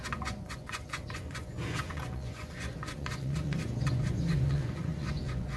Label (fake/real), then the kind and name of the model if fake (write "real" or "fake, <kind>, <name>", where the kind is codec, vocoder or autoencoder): fake, vocoder, Vocos